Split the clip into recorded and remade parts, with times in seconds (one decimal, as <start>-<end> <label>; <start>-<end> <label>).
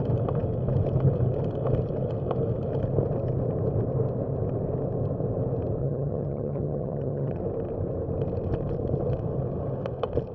0.0-5.8 recorded; 5.8-7.4 remade; 7.4-10.3 recorded